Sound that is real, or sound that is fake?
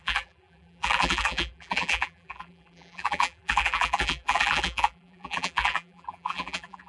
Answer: fake